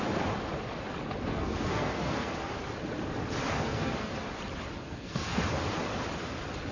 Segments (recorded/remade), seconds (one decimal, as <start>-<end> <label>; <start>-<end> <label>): 0.0-1.3 recorded; 1.3-2.5 remade; 2.5-3.5 recorded; 3.5-4.1 remade; 4.1-4.8 recorded; 4.8-5.4 remade; 5.4-6.7 recorded